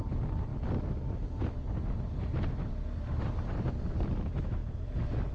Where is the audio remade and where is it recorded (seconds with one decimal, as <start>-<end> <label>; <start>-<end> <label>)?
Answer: 0.0-5.3 recorded